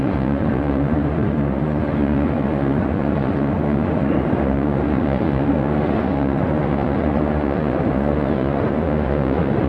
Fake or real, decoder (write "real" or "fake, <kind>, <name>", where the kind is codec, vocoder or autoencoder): fake, vocoder, Vocos